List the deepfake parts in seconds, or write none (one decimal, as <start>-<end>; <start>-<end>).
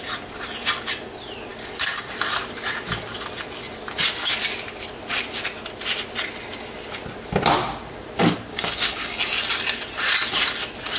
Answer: 8.5-9.2